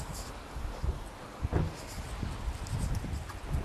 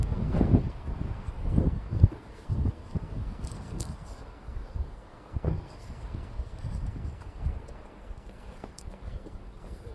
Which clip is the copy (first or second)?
second